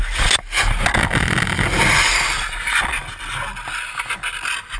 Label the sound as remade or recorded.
recorded